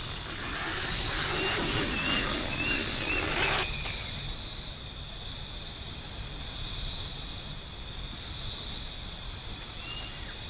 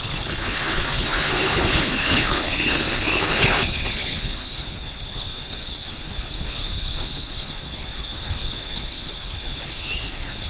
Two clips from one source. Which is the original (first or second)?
first